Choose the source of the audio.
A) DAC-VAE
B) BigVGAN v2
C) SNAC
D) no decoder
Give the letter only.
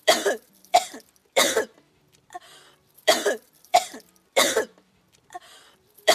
B